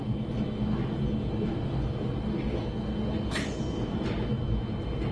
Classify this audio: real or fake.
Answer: real